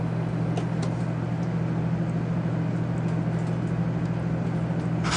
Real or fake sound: real